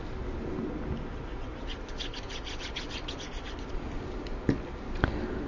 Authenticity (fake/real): real